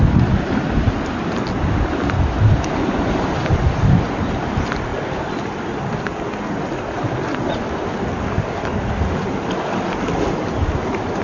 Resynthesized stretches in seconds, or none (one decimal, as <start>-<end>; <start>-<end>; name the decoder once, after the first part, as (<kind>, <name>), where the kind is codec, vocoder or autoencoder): none